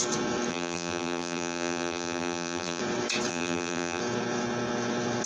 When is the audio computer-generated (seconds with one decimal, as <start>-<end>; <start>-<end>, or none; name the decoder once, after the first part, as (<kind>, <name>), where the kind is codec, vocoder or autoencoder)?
0.5-2.8 (vocoder, BigVGAN v2); 3.3-4.0